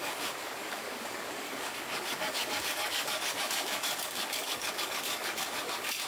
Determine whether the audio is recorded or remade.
remade